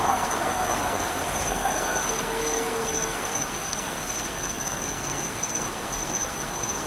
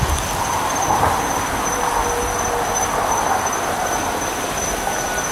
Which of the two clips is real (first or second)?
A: second